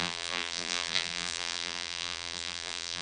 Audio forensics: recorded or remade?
remade